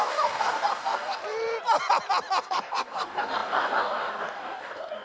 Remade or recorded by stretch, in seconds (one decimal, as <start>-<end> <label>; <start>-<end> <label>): 0.0-1.2 remade; 1.2-2.4 recorded; 2.4-5.0 remade